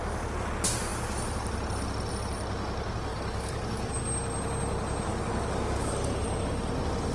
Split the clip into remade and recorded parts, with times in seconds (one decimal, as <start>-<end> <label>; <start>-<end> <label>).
0.0-3.1 recorded; 3.1-3.9 remade; 3.9-5.1 recorded; 5.1-5.9 remade; 5.9-7.1 recorded